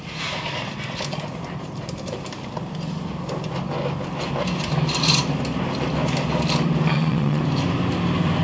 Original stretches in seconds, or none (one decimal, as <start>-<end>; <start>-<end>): 0.0-6.9; 7.4-8.4